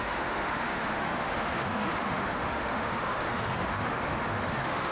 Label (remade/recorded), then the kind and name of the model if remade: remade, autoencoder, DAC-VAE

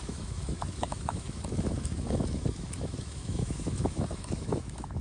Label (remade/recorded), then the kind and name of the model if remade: remade, autoencoder, DAC-VAE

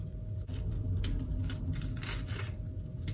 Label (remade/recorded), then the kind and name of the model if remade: recorded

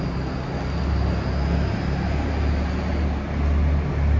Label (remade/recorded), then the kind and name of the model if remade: recorded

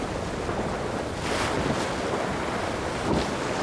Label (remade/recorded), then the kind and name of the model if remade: recorded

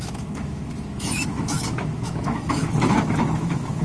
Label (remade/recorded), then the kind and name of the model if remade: remade, autoencoder, DAC-VAE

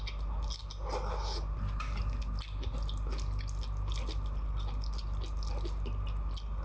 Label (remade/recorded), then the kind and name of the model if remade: recorded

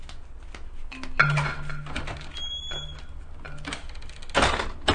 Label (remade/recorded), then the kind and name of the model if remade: recorded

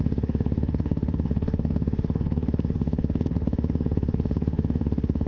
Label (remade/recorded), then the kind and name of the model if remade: remade, autoencoder, DAC-VAE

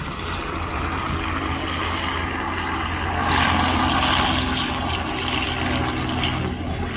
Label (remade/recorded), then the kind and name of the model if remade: recorded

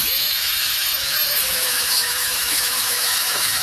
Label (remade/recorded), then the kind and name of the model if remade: remade, autoencoder, DAC-VAE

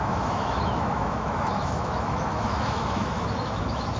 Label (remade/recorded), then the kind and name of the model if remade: remade, autoencoder, DAC-VAE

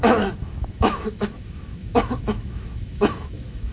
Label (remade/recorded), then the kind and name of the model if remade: remade, autoencoder, DAC-VAE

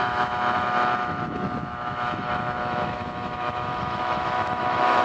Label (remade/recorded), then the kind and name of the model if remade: remade, autoencoder, DAC-VAE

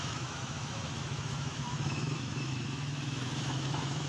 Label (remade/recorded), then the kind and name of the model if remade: remade, autoencoder, DAC-VAE